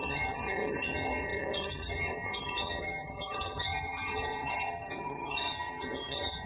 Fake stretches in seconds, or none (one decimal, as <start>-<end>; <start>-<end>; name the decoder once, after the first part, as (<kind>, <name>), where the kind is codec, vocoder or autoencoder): 0.0-6.5 (vocoder, HiFi-GAN)

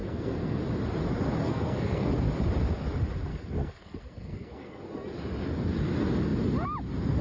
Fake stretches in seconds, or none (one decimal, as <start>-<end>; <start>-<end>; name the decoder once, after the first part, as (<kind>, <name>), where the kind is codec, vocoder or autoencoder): 0.0-0.6 (codec, SNAC); 1.4-2.1; 3.3-4.8